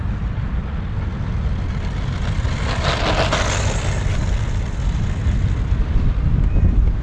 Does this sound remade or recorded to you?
recorded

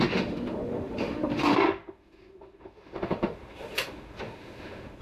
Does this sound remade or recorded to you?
remade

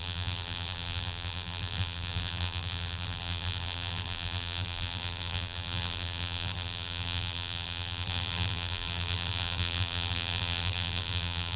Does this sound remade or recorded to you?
remade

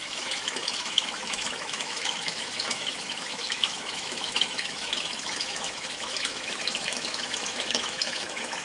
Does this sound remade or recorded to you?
remade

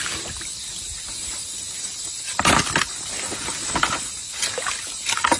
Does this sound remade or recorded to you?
recorded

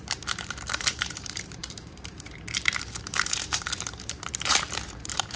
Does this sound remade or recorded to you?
remade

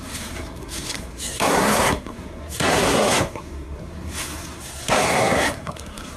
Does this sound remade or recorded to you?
remade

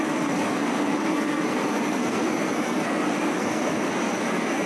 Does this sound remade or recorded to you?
remade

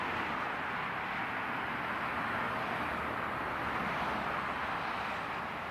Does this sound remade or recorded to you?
recorded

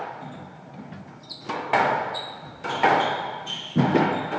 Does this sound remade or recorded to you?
recorded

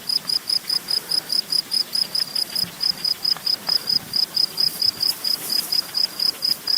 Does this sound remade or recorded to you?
remade